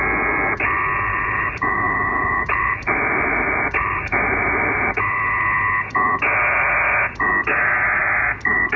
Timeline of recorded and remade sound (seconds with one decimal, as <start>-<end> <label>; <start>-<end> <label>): 0.0-1.1 recorded; 1.1-4.9 remade; 4.9-8.0 recorded; 8.0-8.8 remade